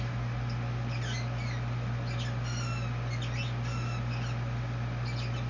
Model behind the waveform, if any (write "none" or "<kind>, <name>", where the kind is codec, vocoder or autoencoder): none